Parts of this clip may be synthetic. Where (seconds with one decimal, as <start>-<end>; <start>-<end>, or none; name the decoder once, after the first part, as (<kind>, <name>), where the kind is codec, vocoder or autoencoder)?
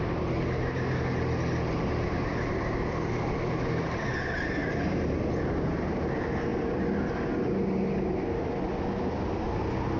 none